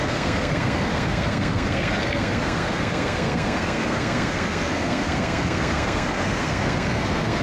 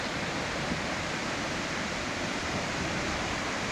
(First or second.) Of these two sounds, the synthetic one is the first